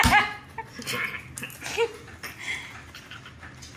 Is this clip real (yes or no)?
yes